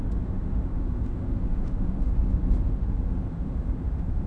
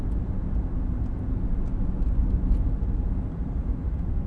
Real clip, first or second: second